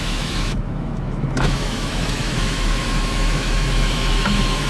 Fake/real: fake